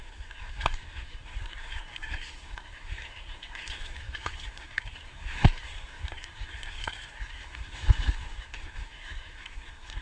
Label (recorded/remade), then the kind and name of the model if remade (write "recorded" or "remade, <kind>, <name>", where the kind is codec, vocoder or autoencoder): remade, codec, SNAC